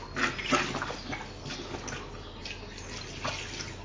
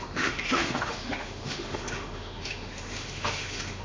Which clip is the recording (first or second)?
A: first